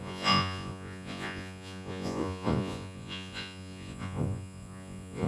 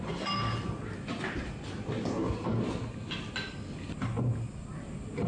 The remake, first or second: first